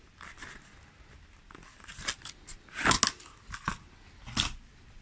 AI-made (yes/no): no